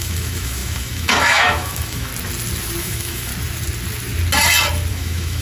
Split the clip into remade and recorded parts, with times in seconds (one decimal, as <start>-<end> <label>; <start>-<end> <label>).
0.0-2.1 remade; 2.1-2.8 recorded; 2.8-3.3 remade; 3.3-4.9 recorded; 4.9-5.4 remade